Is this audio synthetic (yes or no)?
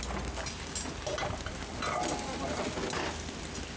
no